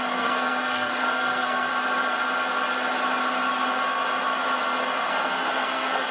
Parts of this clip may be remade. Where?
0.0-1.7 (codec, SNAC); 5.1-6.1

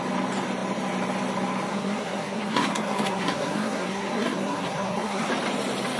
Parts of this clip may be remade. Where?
1.7-5.3 (codec, SNAC)

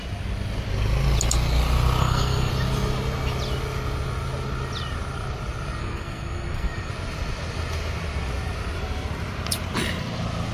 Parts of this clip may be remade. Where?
2.0-2.5 (codec, SNAC); 5.8-6.9

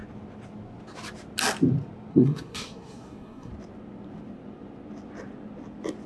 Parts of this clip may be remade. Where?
2.1-3.5 (codec, SNAC)